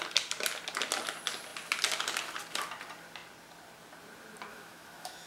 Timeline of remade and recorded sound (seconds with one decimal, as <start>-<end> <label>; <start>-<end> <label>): 0.0-4.5 recorded; 4.5-5.3 remade

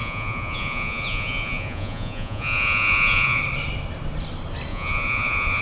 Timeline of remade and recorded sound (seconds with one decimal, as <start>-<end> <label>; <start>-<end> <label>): 0.0-3.4 remade; 3.4-4.7 recorded; 4.7-5.6 remade

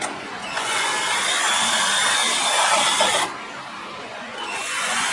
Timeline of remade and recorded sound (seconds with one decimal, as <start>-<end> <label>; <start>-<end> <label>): 0.0-0.9 remade; 0.9-4.0 recorded; 4.0-5.1 remade

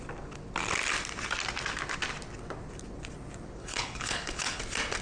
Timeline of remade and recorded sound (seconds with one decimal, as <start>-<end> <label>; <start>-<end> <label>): 0.0-3.6 recorded; 3.6-4.6 remade; 4.6-5.0 recorded

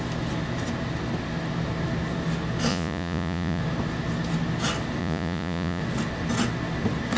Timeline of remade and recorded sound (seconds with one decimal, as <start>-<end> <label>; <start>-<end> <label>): 0.0-2.7 recorded; 2.7-3.6 remade; 3.6-5.0 recorded; 5.0-5.8 remade; 5.8-7.2 recorded

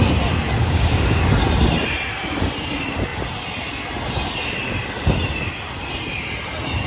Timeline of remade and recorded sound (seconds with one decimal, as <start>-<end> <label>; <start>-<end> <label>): 0.0-0.6 recorded; 0.6-1.2 remade; 1.2-6.9 recorded

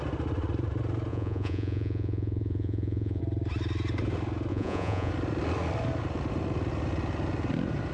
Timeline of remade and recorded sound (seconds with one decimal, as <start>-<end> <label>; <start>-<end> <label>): 0.0-1.1 recorded; 1.1-3.2 remade; 3.2-4.5 recorded; 4.5-5.1 remade; 5.1-7.9 recorded